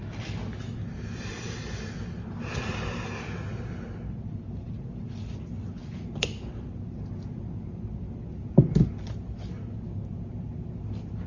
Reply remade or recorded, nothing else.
recorded